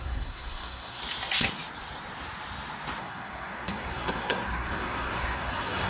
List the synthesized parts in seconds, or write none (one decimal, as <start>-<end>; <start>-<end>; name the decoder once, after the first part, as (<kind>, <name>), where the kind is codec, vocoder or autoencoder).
0.0-1.0 (codec, SNAC); 3.0-5.9